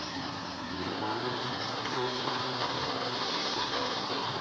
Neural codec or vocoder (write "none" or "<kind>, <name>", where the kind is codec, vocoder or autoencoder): codec, SNAC